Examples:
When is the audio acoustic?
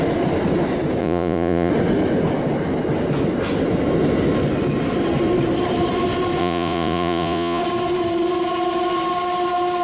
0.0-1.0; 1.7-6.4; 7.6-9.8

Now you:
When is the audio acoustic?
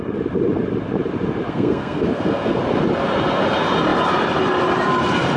0.0-1.5; 2.6-5.4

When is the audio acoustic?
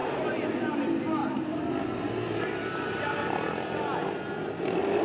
0.0-5.0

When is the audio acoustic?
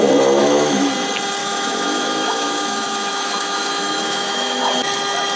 0.0-0.4; 0.9-1.4; 4.6-5.4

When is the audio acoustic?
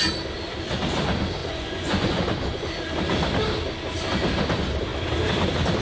0.0-1.4; 2.7-5.8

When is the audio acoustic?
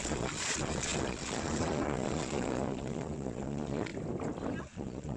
3.9-4.6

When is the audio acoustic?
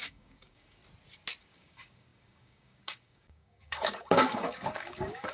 0.8-1.4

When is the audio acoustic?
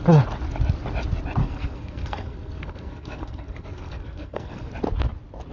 0.0-1.4; 4.7-5.5